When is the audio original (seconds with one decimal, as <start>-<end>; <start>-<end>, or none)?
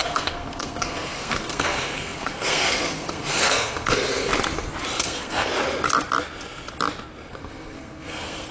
4.3-5.0; 5.5-7.3